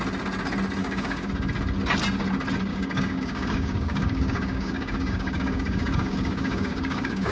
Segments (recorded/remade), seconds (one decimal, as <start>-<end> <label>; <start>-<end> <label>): 0.0-0.8 recorded; 0.8-1.3 remade; 1.3-2.7 recorded; 2.7-7.3 remade